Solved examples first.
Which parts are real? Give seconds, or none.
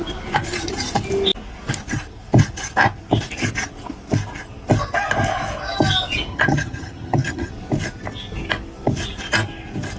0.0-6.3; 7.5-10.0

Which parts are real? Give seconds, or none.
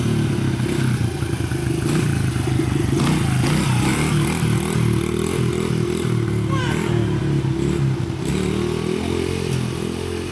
0.0-10.3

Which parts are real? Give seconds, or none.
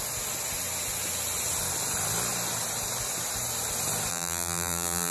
0.0-4.1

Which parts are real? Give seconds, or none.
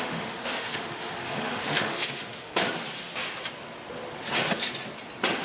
2.5-5.4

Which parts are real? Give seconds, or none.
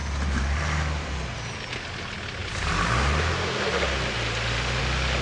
1.1-5.2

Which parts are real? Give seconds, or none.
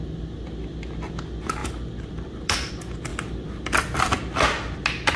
0.0-5.2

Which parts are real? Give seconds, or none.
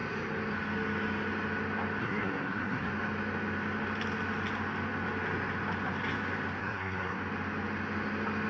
0.0-2.0; 2.9-6.6; 7.2-8.5